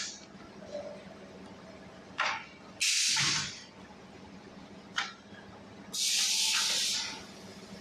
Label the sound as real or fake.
real